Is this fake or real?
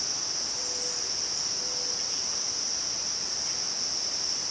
real